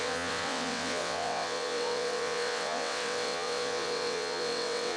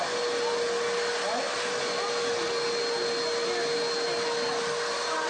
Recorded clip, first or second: second